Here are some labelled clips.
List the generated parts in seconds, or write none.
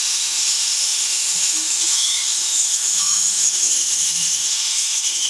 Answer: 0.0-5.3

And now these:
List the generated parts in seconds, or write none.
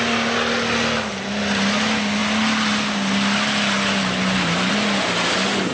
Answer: none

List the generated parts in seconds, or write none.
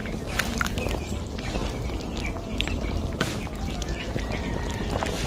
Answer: none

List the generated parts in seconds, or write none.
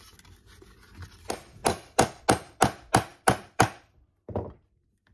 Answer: 1.6-2.2; 3.1-5.1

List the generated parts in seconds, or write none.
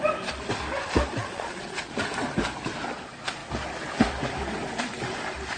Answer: 1.2-1.9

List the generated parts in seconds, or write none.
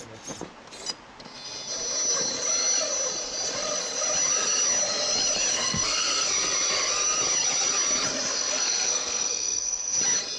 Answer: 5.5-6.3; 8.3-10.0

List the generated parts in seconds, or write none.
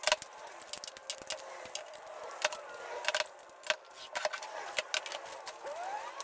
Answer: none